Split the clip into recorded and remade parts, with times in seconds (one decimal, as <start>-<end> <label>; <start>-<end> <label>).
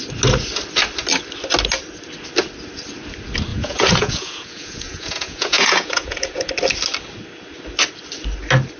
0.0-3.5 recorded; 3.5-6.5 remade; 6.5-8.8 recorded